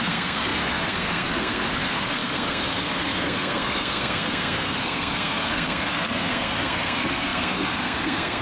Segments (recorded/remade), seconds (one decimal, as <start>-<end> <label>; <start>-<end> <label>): 0.0-8.4 remade